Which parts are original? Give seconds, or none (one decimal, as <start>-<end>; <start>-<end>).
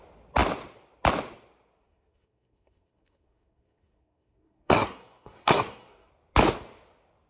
0.0-1.8; 6.1-7.3